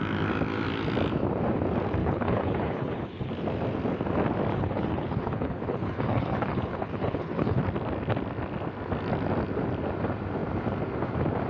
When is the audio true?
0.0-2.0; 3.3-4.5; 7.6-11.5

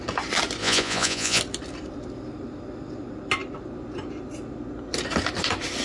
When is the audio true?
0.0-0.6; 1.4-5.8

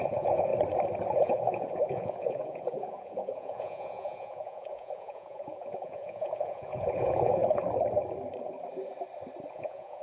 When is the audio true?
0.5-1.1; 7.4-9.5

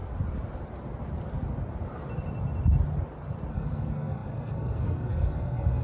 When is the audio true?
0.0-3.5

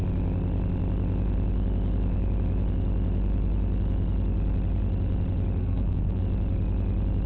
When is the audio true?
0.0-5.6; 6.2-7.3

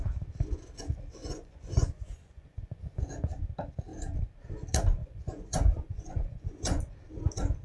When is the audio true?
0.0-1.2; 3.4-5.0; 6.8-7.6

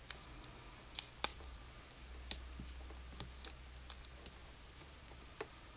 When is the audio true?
0.0-1.3; 1.9-4.4

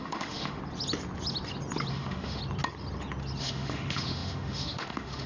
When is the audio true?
0.6-1.9; 2.4-3.4